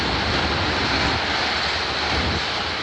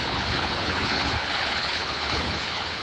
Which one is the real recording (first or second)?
first